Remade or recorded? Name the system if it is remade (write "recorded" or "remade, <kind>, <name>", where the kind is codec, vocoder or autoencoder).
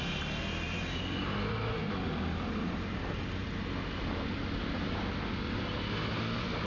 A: recorded